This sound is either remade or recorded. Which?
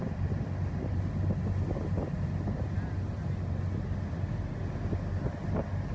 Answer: recorded